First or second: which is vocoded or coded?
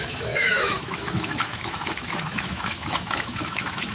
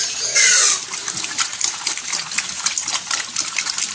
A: first